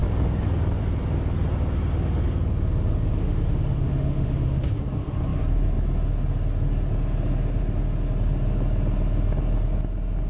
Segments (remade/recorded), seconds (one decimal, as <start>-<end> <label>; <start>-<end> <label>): 0.0-3.2 recorded; 3.2-4.8 remade; 4.8-10.3 recorded